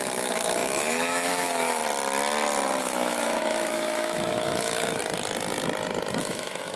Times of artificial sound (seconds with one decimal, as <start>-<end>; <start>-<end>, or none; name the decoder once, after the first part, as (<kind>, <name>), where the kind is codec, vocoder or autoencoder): 0.0-1.8 (autoencoder, DAC-VAE); 2.8-5.0; 6.2-6.8